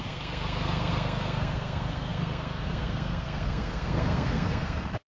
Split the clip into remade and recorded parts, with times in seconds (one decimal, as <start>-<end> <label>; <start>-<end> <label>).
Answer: 0.0-5.1 remade